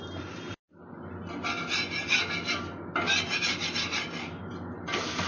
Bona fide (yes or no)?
yes